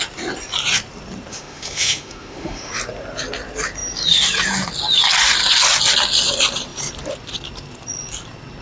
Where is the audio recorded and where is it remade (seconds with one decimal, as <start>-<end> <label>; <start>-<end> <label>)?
0.0-1.3 recorded; 1.3-2.7 remade; 2.7-8.6 recorded